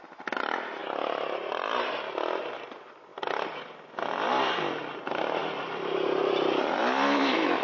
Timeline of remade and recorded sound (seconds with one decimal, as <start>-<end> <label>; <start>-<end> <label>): 0.0-7.6 recorded